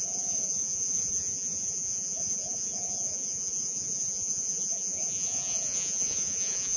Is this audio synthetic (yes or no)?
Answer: yes